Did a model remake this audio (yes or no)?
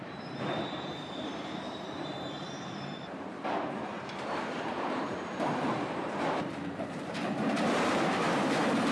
yes